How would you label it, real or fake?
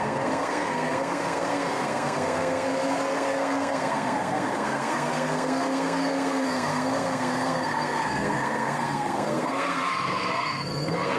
fake